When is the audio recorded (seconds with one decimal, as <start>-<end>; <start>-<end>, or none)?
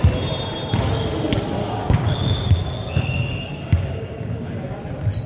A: 0.0-1.6; 4.8-5.3